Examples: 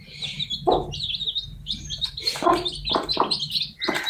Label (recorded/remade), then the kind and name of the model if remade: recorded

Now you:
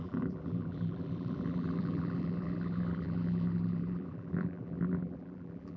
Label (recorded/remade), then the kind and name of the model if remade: remade, vocoder, BigVGAN v2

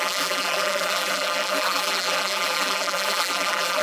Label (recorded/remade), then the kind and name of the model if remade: remade, vocoder, BigVGAN v2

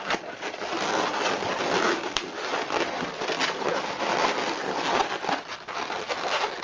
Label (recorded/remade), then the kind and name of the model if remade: recorded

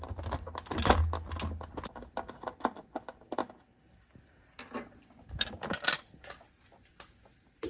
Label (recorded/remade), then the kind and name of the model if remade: recorded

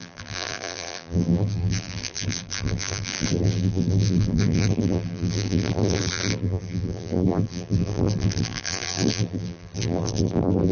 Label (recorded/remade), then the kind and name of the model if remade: remade, vocoder, BigVGAN v2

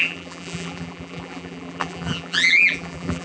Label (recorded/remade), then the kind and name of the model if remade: remade, vocoder, BigVGAN v2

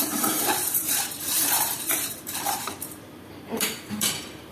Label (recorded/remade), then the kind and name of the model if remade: remade, vocoder, BigVGAN v2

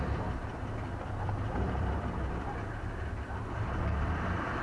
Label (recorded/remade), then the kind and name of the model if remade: remade, vocoder, BigVGAN v2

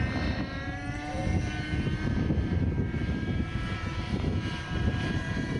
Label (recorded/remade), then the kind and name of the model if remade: remade, vocoder, BigVGAN v2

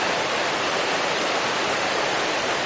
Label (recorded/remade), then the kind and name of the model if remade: remade, vocoder, BigVGAN v2